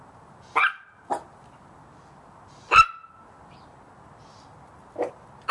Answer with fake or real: real